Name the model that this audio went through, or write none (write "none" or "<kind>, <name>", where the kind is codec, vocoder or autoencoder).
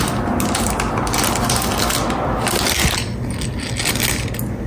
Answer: none